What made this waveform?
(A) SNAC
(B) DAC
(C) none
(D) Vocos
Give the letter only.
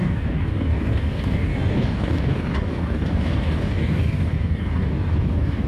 B